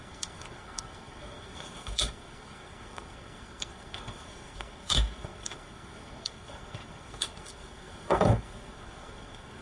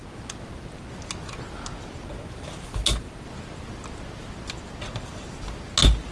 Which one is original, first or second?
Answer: second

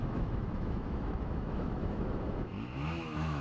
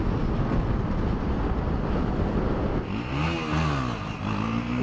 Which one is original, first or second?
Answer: second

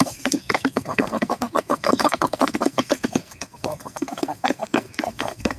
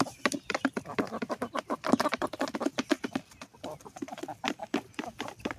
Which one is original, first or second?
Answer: second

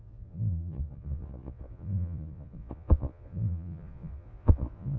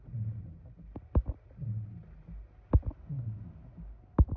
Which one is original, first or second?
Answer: second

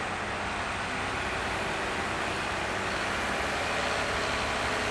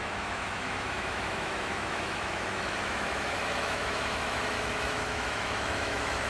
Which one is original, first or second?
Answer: first